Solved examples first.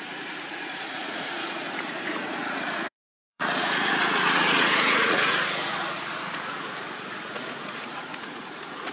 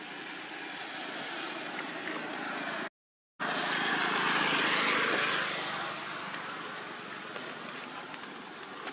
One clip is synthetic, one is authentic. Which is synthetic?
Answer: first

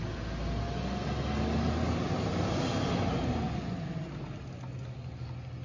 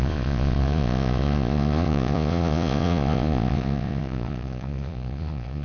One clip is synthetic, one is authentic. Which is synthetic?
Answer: second